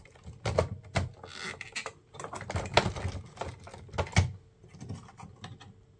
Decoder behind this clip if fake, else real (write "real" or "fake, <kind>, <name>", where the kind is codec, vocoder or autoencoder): real